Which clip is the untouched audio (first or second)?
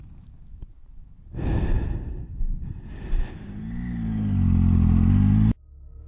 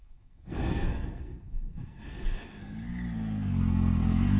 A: first